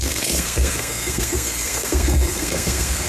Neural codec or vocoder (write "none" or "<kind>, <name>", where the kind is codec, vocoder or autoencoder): codec, SNAC